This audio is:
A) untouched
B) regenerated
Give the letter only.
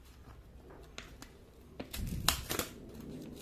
A